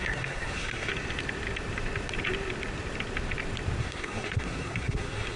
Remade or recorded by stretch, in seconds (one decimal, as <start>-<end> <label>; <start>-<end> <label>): 0.0-0.9 remade; 0.9-3.8 recorded; 3.8-5.4 remade